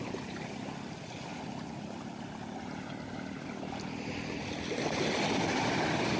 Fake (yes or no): no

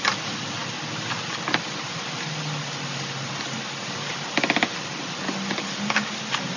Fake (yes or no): no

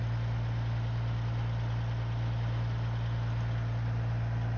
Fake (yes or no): no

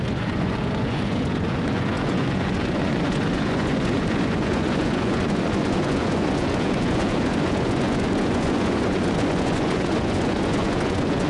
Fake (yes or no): yes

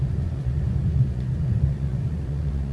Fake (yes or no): yes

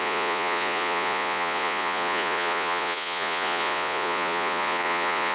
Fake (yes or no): yes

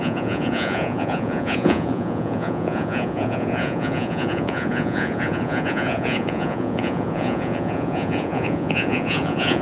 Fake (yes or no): yes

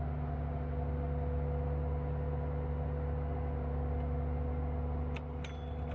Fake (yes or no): no